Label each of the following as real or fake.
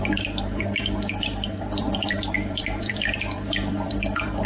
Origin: fake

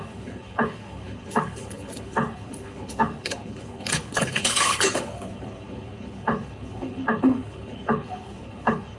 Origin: fake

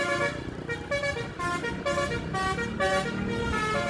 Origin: real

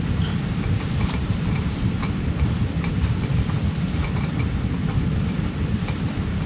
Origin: real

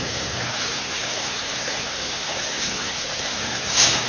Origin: fake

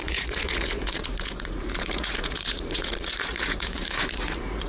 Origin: fake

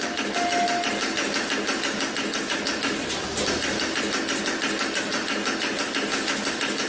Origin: real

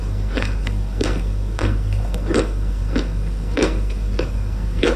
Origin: fake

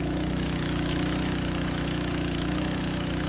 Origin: fake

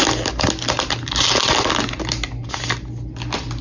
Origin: real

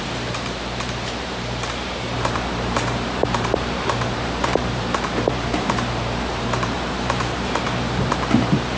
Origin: fake